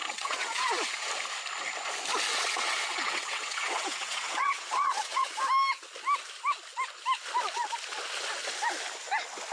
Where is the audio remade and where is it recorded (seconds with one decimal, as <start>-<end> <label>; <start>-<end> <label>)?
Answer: 0.0-1.1 remade; 1.1-2.3 recorded; 2.3-5.4 remade; 5.4-9.5 recorded